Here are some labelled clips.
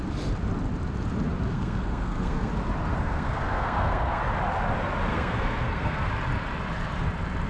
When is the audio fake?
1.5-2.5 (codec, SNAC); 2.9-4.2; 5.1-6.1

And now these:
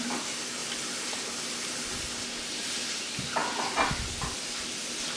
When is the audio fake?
none

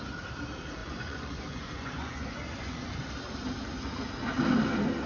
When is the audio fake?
0.8-3.0 (vocoder, Vocos)

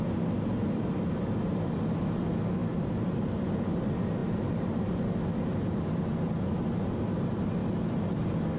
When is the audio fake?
none

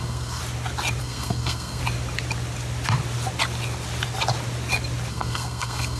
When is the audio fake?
0.0-0.4 (codec, SNAC); 1.0-1.8; 5.1-6.0

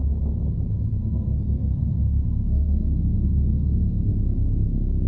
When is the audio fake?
1.0-4.1 (codec, SNAC)